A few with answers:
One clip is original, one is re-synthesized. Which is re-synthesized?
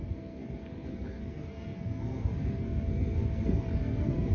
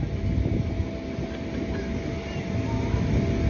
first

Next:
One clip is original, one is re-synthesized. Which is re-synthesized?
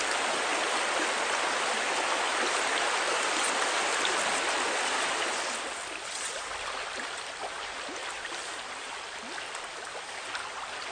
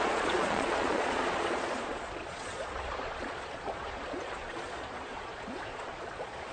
second